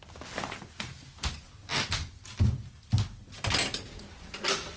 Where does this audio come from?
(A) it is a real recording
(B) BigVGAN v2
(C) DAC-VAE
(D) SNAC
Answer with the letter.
A